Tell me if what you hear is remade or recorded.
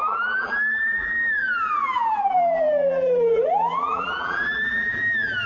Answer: remade